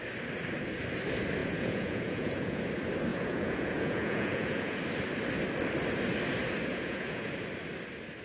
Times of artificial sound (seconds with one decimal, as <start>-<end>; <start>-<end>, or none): 1.4-2.6; 3.1-4.8; 6.7-7.3